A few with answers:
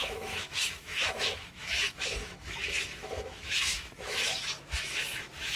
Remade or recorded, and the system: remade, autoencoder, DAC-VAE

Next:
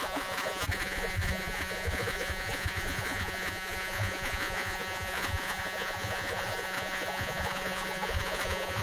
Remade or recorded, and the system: remade, vocoder, Vocos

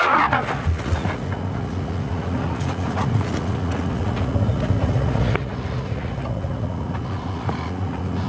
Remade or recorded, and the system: remade, vocoder, Vocos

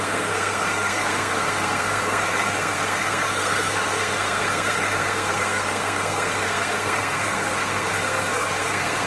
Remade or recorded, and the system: remade, codec, SNAC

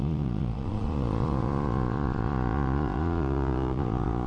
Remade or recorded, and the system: remade, vocoder, Vocos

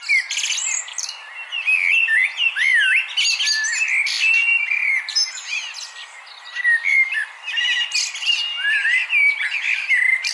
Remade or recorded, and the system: recorded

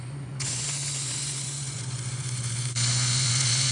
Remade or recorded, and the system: remade, vocoder, Vocos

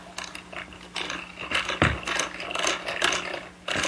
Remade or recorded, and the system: recorded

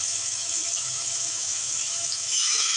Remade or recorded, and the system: remade, autoencoder, DAC-VAE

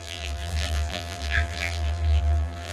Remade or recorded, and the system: remade, vocoder, BigVGAN v2